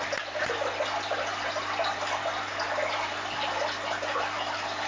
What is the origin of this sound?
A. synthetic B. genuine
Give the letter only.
B